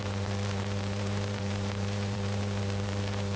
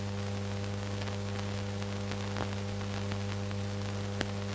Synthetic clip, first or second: first